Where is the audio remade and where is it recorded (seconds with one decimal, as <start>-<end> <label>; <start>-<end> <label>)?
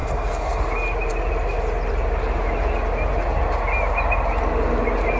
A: 0.0-0.6 remade; 0.6-5.2 recorded